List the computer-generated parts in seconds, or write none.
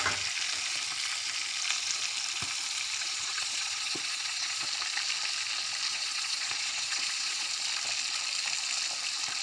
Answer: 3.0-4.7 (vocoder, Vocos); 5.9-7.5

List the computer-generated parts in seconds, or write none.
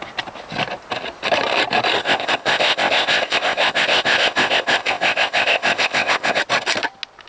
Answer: 2.0-6.4 (codec, ZipCodec)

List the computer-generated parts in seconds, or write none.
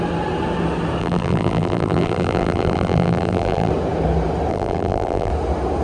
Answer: 1.0-3.7 (vocoder, BigVGAN v2); 4.5-5.3